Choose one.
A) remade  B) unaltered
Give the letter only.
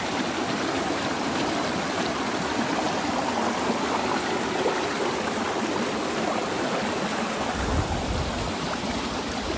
A